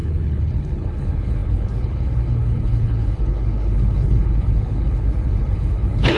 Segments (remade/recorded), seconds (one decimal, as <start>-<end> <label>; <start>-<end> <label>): 0.0-6.2 remade